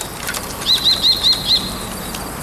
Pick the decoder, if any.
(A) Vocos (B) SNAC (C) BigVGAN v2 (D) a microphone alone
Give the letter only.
C